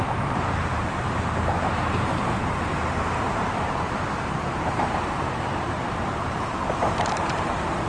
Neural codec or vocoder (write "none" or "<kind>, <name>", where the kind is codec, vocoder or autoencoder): vocoder, BigVGAN v2